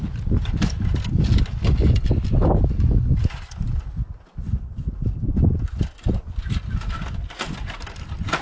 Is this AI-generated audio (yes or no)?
no